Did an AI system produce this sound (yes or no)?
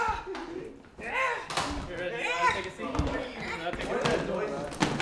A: no